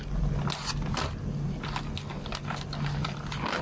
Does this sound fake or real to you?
real